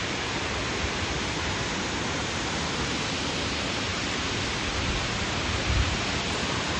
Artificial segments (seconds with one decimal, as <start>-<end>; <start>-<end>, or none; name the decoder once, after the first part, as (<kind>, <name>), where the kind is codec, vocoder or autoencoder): none